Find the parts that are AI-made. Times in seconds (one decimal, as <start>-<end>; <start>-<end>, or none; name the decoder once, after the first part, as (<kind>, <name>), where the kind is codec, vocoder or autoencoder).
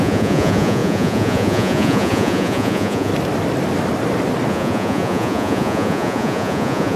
0.0-3.1 (vocoder, Vocos); 4.5-7.0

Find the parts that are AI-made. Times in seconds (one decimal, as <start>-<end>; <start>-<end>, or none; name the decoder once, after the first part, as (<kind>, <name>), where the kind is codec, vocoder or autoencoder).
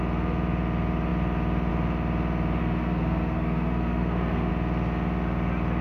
2.6-4.5 (codec, SNAC)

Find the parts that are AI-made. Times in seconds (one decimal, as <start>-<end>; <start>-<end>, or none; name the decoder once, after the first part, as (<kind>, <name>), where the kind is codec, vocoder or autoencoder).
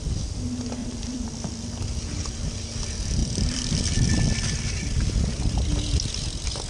0.8-1.7 (vocoder, BigVGAN v2); 3.2-4.1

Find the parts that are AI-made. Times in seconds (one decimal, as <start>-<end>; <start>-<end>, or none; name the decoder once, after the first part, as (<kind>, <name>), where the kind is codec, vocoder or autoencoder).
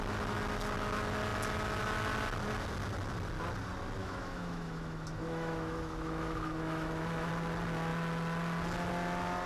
4.0-7.3 (autoencoder, DAC-VAE)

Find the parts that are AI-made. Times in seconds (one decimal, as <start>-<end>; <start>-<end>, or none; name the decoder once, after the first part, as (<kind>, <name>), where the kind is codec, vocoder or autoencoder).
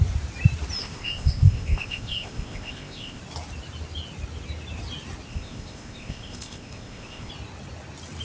0.8-3.2 (codec, ZipCodec); 5.3-7.3